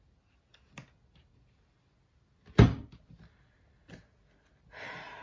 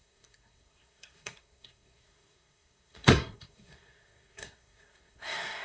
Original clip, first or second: first